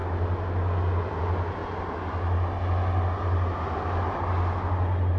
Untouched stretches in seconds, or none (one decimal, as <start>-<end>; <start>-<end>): 0.0-5.2